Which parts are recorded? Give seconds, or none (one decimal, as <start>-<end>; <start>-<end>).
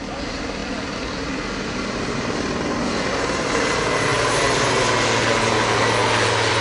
0.0-6.6